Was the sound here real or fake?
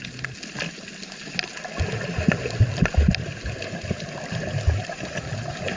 real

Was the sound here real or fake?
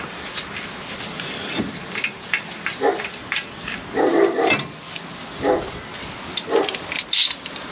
real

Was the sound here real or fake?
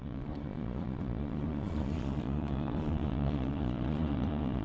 fake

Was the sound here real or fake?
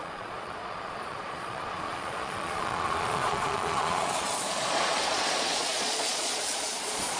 fake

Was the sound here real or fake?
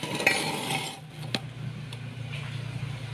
real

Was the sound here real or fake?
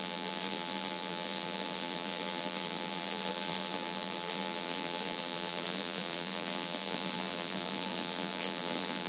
fake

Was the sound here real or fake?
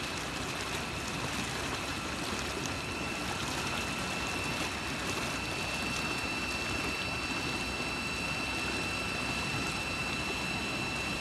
real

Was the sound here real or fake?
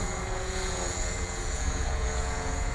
fake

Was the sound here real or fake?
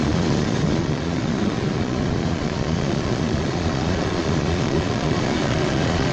fake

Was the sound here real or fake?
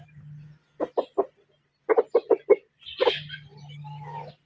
real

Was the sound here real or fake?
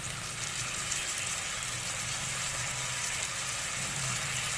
real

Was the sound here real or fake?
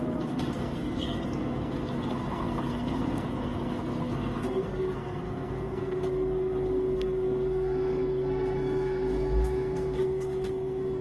fake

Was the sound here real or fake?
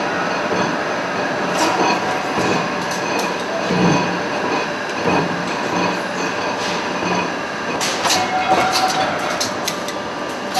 real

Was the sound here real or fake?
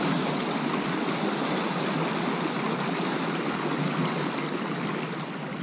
real